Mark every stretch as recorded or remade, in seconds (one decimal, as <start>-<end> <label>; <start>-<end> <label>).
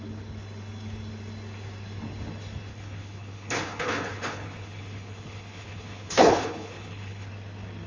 0.0-2.7 recorded; 2.7-7.3 remade; 7.3-7.9 recorded